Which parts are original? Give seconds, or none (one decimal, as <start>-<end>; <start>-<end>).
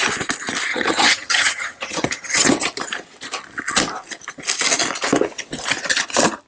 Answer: 0.0-0.7; 2.5-6.5